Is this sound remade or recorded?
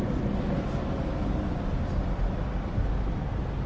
recorded